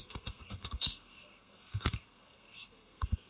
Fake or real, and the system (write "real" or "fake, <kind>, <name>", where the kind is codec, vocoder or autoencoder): fake, codec, SNAC